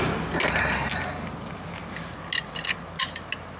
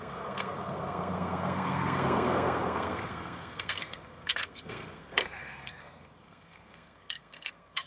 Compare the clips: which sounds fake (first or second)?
second